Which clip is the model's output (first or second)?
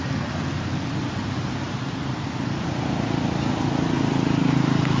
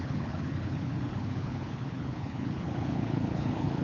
second